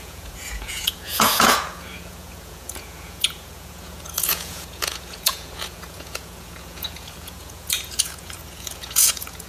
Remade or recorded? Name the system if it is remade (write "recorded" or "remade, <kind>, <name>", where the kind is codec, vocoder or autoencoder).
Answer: remade, vocoder, Vocos